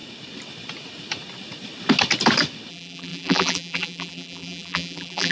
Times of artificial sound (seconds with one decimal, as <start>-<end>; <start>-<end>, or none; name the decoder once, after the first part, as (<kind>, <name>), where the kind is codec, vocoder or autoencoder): 2.7-5.3 (vocoder, BigVGAN v2)